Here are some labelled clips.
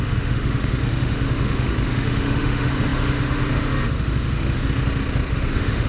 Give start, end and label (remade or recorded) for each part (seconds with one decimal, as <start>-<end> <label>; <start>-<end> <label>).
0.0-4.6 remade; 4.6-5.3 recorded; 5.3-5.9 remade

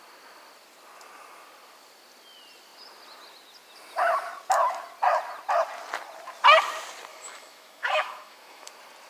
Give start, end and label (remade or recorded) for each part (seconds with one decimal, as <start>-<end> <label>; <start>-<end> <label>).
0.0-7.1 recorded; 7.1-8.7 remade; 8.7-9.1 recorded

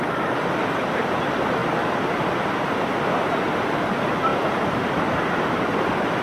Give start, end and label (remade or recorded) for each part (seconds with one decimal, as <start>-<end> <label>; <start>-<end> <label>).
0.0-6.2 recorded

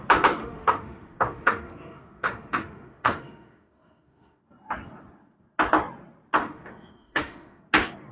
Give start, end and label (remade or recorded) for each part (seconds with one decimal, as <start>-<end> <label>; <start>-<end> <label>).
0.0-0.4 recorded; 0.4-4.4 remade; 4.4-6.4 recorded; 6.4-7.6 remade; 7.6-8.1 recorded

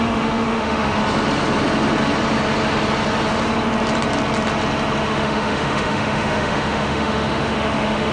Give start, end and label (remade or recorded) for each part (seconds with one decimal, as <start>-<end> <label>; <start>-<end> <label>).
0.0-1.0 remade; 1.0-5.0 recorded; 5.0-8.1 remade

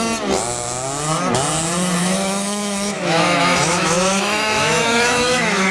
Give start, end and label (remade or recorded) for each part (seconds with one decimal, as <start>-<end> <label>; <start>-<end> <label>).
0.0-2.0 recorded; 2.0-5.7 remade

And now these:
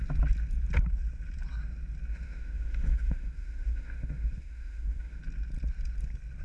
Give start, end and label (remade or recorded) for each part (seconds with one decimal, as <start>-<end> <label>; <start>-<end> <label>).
0.0-2.1 recorded; 2.1-5.2 remade; 5.2-6.4 recorded